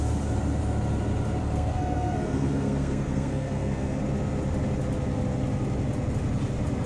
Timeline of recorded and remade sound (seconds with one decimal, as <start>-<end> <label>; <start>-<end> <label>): 0.0-1.4 recorded; 1.4-4.0 remade; 4.0-6.9 recorded